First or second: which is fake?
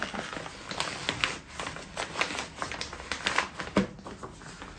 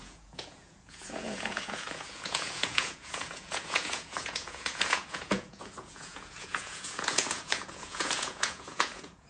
second